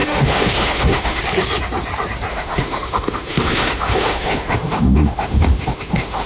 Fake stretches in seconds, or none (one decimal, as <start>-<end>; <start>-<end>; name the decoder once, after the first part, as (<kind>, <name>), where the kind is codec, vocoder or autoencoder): 0.0-1.2 (autoencoder, DAC-VAE); 2.3-6.3